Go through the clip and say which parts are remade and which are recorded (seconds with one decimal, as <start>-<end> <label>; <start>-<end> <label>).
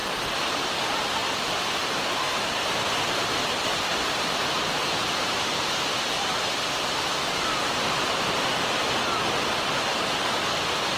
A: 0.0-9.9 recorded; 9.9-10.6 remade; 10.6-11.0 recorded